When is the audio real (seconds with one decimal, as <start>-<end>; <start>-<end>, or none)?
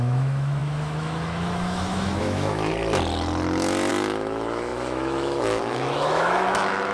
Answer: 2.7-3.9